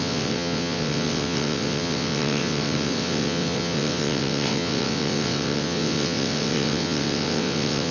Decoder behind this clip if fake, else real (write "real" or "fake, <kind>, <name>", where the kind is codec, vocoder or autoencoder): fake, vocoder, WaveNeXt